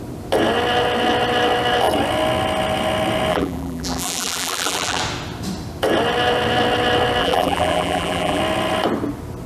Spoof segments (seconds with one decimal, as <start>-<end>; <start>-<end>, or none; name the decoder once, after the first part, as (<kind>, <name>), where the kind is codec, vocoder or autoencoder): 3.3-5.0 (vocoder, BigVGAN v2); 7.2-8.4